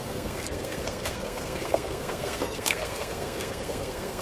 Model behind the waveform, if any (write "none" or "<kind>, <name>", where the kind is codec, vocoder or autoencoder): codec, SNAC